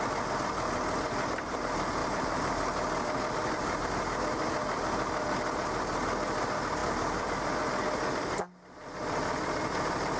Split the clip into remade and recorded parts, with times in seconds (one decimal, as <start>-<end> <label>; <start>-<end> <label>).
0.0-2.0 recorded; 2.0-3.9 remade; 3.9-6.8 recorded; 6.8-7.7 remade; 7.7-10.2 recorded